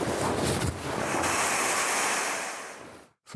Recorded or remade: recorded